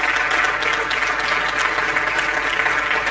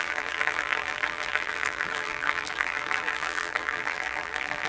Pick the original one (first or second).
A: first